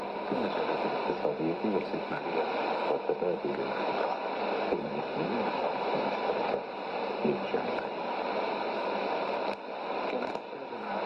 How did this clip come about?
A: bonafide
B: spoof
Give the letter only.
A